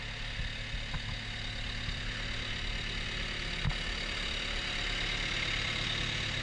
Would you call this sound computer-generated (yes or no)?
no